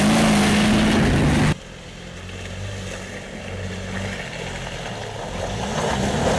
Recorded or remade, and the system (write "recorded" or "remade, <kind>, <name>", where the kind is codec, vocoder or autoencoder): recorded